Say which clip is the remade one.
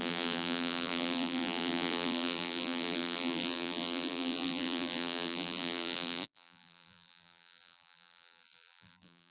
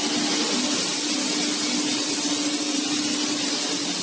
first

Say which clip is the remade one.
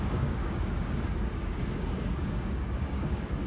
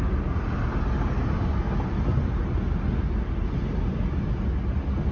first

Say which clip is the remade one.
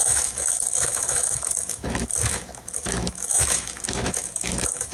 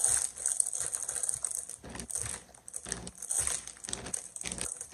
first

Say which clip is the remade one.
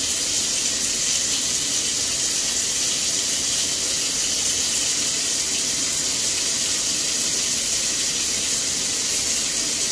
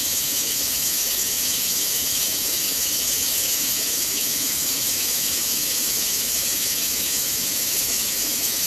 second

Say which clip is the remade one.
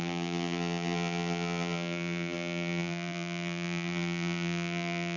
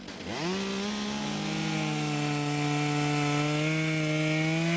first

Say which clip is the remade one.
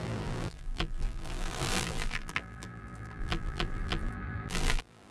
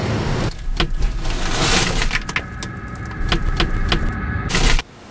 first